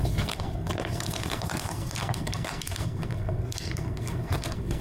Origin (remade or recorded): remade